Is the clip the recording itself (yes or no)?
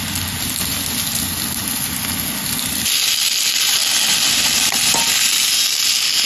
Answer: yes